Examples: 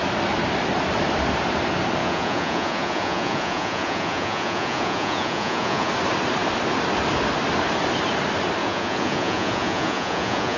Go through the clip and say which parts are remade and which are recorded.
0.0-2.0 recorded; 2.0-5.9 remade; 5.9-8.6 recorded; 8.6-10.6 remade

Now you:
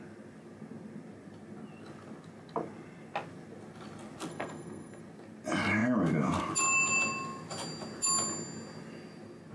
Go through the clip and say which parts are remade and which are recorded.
0.0-4.3 recorded; 4.3-5.0 remade; 5.0-9.5 recorded

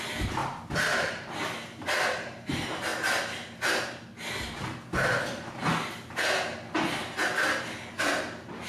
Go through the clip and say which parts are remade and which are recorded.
0.0-0.4 recorded; 0.4-1.4 remade; 1.4-8.7 recorded